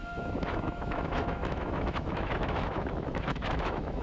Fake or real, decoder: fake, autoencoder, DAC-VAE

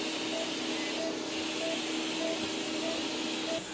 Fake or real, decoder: real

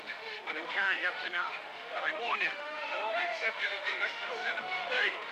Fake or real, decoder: fake, autoencoder, DAC-VAE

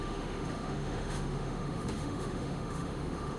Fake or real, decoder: fake, autoencoder, DAC-VAE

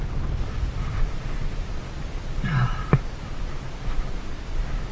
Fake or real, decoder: real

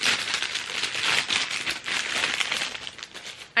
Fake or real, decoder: real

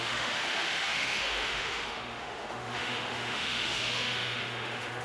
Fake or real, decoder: fake, autoencoder, DAC-VAE